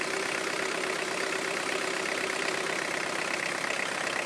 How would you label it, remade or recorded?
recorded